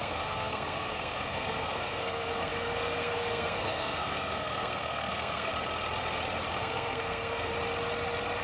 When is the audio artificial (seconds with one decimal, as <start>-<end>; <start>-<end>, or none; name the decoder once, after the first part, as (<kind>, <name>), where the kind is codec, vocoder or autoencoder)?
0.0-5.5 (codec, SNAC); 6.6-7.5